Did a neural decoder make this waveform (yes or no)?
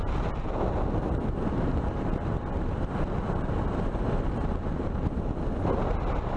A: no